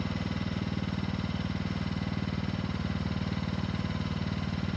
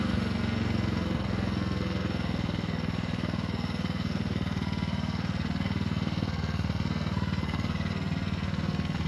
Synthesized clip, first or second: second